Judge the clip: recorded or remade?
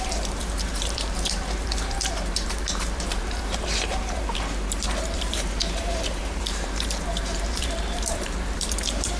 remade